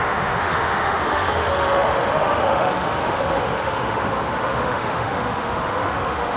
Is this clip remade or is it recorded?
remade